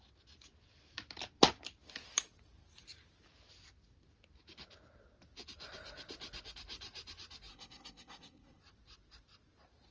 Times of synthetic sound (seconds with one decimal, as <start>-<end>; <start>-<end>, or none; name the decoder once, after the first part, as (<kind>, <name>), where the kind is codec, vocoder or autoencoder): 7.5-8.6 (codec, SNAC)